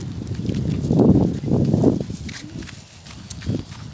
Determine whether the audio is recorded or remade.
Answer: recorded